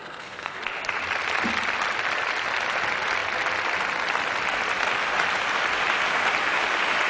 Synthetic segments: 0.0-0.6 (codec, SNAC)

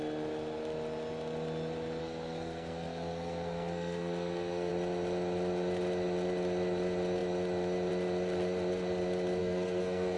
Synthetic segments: 2.0-4.7 (codec, SNAC); 9.4-10.2